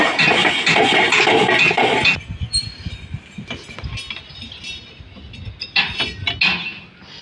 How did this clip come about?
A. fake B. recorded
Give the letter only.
B